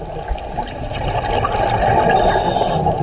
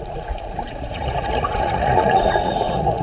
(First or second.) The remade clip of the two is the second